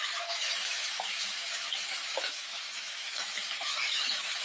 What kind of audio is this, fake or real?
fake